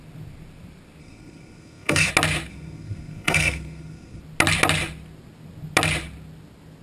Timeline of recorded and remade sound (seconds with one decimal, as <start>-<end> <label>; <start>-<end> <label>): 0.0-1.0 recorded; 1.0-2.1 remade; 2.1-2.5 recorded; 2.5-4.2 remade; 4.2-6.8 recorded